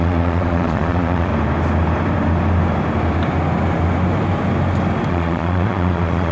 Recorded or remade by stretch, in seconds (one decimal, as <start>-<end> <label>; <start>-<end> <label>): 0.0-1.3 remade; 1.3-5.1 recorded; 5.1-6.3 remade